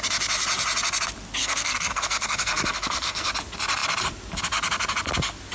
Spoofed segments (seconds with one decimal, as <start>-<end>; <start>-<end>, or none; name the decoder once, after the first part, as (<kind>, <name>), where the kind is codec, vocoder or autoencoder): 1.4-3.3 (codec, SNAC)